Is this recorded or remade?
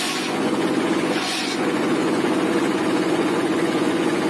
remade